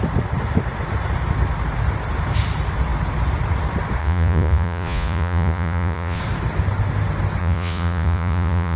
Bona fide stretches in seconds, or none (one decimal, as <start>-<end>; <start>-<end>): 0.0-4.0; 6.2-7.4